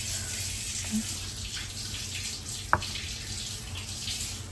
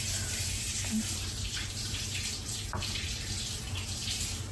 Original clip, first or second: first